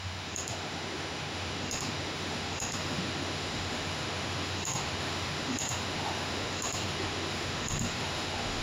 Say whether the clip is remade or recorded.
remade